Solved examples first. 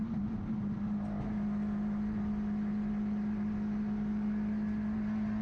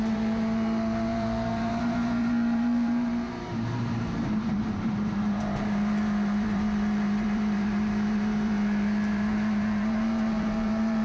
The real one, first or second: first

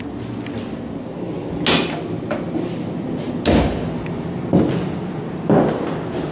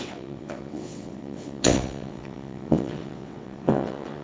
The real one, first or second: first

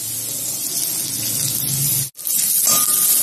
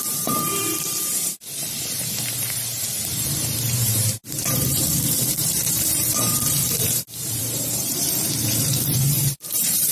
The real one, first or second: first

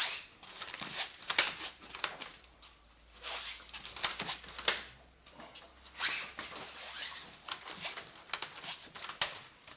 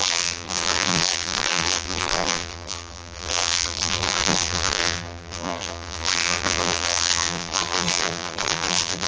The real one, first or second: first